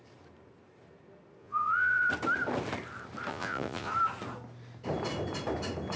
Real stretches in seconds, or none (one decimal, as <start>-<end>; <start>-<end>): 0.0-1.4; 2.1-3.3; 3.9-6.0